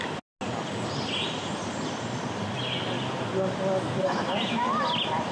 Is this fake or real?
real